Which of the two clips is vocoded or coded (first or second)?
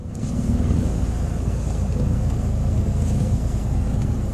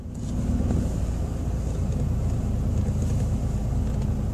first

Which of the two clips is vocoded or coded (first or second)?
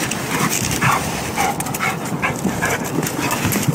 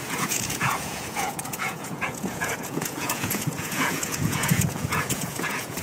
second